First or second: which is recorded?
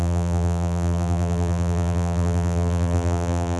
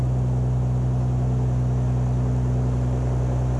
second